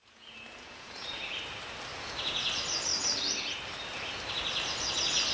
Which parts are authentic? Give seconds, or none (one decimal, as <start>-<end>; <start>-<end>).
1.2-1.9; 2.5-5.3